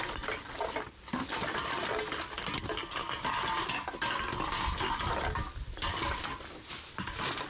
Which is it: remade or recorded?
recorded